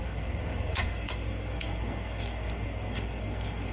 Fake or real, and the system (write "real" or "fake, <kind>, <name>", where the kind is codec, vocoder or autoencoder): fake, codec, SNAC